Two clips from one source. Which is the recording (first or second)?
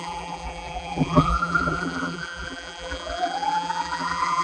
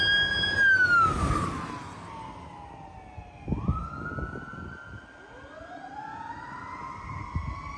second